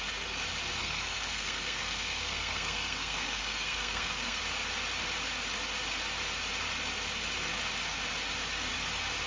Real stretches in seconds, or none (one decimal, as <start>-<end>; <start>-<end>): 0.0-0.8; 4.4-9.3